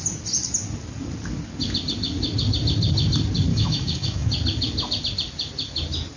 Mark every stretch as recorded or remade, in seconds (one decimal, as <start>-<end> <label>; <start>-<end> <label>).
0.0-3.5 recorded; 3.5-4.3 remade; 4.3-6.2 recorded